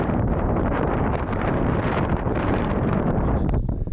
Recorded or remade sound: remade